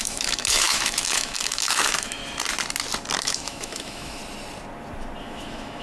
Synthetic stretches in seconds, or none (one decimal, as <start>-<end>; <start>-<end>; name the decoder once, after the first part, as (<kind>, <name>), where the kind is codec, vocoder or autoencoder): 0.0-2.2 (autoencoder, DAC-VAE); 3.2-4.2; 5.2-5.8